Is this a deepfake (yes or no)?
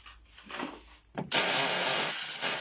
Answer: no